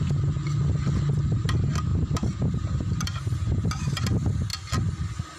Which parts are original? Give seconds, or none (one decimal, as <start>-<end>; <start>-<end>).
0.0-1.9; 4.0-5.4